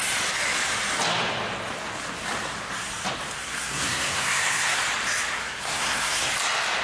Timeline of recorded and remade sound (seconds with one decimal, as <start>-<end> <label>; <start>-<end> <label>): 0.0-3.4 recorded; 3.4-4.8 remade; 4.8-5.4 recorded; 5.4-6.3 remade; 6.3-6.8 recorded

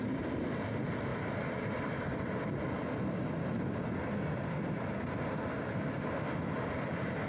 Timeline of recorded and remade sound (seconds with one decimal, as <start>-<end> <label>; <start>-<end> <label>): 0.0-7.3 recorded

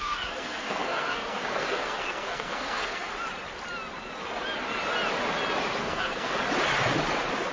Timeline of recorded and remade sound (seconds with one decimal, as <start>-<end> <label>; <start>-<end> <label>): 0.0-3.1 remade; 3.1-5.8 recorded; 5.8-6.4 remade; 6.4-7.5 recorded

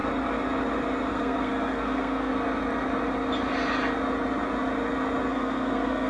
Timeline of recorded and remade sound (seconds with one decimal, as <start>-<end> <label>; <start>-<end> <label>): 0.0-1.1 recorded; 1.1-2.3 remade; 2.3-5.3 recorded; 5.3-6.1 remade

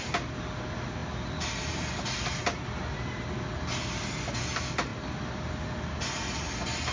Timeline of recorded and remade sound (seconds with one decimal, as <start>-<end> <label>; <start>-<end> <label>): 0.0-6.9 recorded

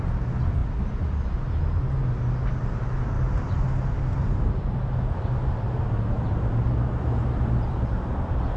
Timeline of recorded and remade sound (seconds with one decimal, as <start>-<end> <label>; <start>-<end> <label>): 0.0-8.6 recorded

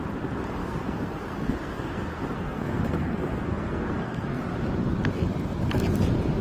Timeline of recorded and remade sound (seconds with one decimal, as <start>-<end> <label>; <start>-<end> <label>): 0.0-0.6 recorded; 0.6-4.4 remade; 4.4-6.4 recorded